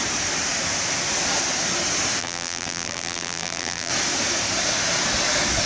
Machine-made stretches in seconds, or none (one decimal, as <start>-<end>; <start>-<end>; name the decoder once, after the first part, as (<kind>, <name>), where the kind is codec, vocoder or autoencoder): 2.2-3.9 (vocoder, BigVGAN v2)